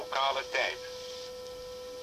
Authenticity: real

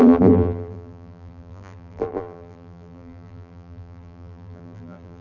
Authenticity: fake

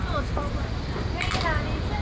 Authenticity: fake